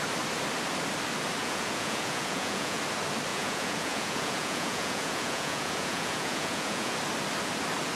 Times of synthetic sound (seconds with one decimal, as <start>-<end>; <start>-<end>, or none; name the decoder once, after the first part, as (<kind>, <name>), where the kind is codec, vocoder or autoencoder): 1.4-2.8 (vocoder, Vocos); 3.3-6.9